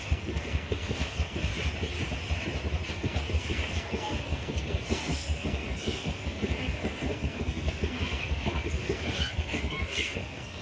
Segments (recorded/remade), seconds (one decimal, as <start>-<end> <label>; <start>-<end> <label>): 0.0-1.5 remade; 1.5-2.9 recorded; 2.9-10.6 remade